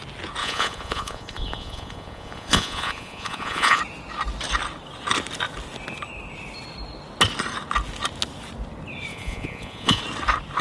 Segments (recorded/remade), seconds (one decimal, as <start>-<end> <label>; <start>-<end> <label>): 0.0-0.4 recorded; 0.4-3.8 remade; 3.8-9.1 recorded; 9.1-10.0 remade; 10.0-10.6 recorded